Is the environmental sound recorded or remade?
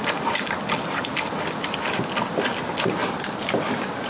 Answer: recorded